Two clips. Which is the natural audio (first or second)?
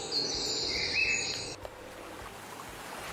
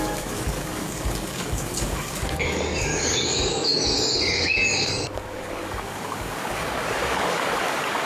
first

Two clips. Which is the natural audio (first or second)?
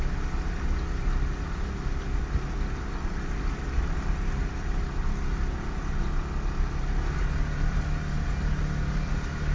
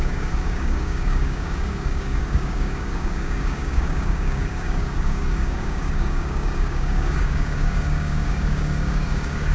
first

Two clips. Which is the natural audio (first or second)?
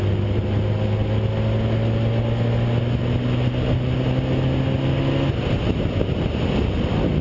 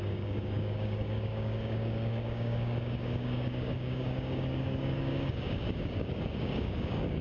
first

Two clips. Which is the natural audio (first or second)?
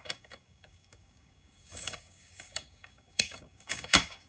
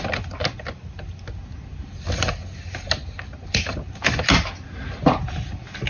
second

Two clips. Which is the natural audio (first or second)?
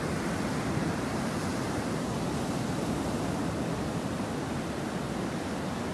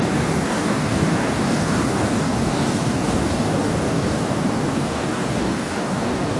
first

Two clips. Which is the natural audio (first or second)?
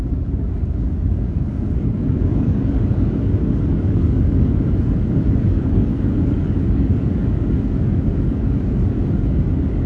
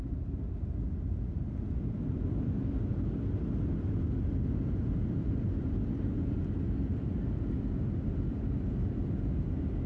second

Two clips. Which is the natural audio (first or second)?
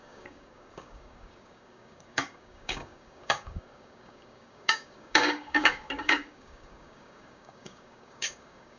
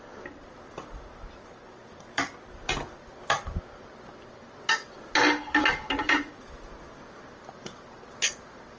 second